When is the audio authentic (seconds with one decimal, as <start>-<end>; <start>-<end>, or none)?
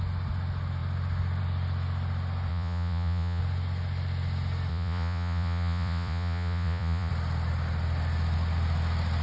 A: 0.0-2.5; 3.4-4.7; 7.1-9.2